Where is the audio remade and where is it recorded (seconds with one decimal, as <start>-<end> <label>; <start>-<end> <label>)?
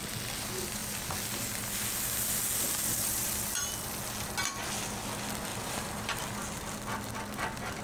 0.0-5.5 recorded; 5.5-6.2 remade; 6.2-7.8 recorded